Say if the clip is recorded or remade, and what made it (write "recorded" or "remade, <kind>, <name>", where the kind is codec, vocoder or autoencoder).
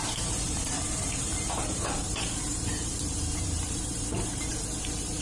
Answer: remade, vocoder, BigVGAN v2